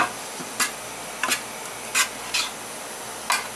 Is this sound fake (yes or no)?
no